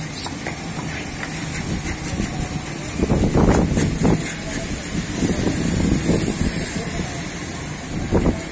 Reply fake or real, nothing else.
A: real